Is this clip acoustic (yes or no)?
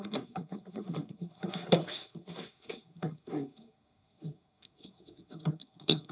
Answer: no